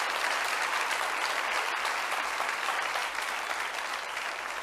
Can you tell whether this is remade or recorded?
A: recorded